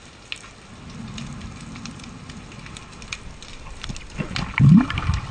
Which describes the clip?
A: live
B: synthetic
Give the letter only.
A